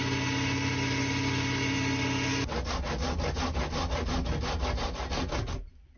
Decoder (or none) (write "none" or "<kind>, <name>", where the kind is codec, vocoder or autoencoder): none